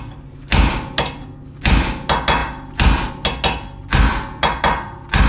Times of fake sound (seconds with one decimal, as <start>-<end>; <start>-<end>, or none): none